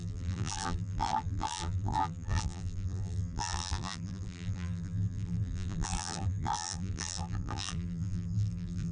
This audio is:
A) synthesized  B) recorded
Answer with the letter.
A